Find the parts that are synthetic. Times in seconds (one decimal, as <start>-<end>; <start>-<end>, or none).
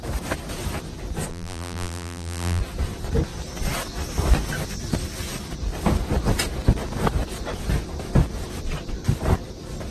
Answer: 1.3-2.6